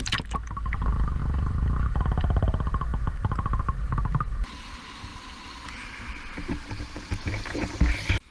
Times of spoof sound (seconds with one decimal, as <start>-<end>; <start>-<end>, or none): none